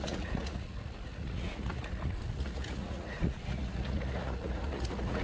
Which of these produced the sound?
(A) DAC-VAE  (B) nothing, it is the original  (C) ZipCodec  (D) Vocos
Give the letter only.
D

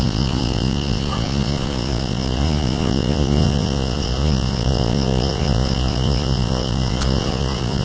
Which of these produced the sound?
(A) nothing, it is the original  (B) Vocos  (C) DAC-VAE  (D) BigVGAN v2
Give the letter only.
B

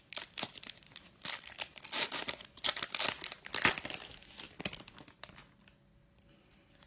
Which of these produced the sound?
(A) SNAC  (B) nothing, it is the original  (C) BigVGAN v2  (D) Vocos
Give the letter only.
B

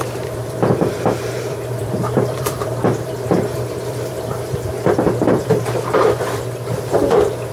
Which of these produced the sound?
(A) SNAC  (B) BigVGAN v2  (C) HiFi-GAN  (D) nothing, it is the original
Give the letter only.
B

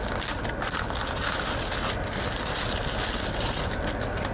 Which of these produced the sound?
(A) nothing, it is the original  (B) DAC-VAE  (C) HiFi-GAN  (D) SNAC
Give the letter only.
A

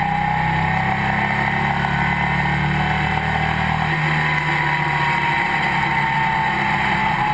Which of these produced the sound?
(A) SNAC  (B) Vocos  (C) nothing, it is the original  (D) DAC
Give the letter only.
C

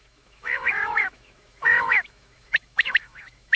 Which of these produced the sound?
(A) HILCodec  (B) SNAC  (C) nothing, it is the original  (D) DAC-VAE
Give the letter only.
D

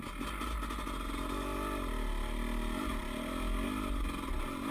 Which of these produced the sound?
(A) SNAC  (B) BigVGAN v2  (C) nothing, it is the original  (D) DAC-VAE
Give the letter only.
C